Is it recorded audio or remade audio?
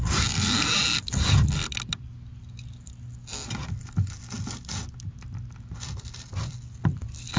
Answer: recorded